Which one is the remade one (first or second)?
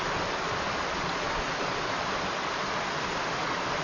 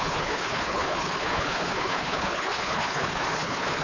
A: second